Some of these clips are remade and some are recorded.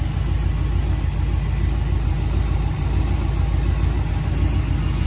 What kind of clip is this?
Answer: recorded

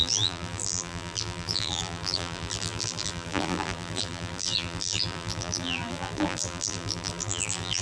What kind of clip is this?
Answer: remade